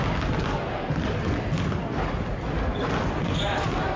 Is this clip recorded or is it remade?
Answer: recorded